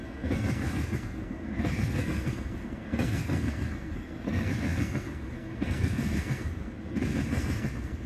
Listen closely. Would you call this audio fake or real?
fake